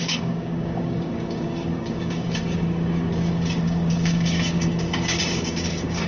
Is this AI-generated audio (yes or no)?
yes